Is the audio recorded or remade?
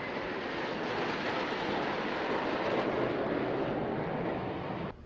recorded